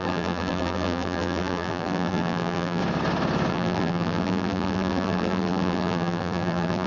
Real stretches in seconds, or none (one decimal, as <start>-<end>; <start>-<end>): 2.8-3.5